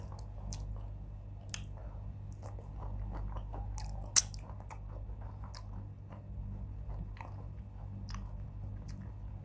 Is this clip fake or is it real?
real